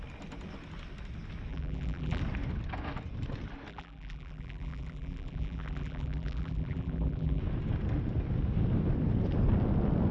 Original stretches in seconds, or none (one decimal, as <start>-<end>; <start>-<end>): 0.0-1.5; 2.2-3.7; 7.4-10.1